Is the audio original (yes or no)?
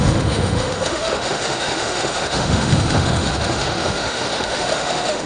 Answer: no